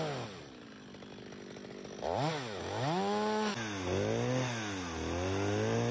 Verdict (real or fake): real